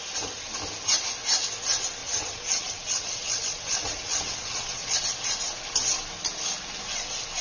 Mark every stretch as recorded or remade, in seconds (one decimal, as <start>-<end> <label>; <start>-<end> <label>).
0.0-2.0 recorded; 2.0-5.0 remade; 5.0-7.4 recorded